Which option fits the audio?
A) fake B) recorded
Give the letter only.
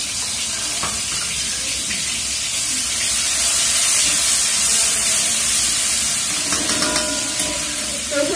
A